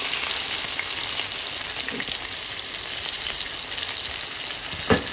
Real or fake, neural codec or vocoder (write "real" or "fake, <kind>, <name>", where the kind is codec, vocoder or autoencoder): real